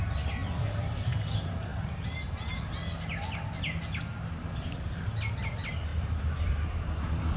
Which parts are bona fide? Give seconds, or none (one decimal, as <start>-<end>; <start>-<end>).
0.0-5.9; 6.8-7.4